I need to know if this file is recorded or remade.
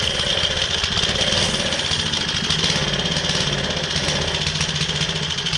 recorded